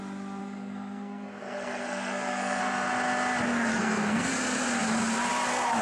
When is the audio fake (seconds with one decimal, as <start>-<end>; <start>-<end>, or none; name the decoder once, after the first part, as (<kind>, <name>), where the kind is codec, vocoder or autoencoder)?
0.4-2.6 (codec, SNAC); 3.7-4.3